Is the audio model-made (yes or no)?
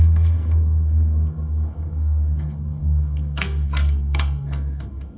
yes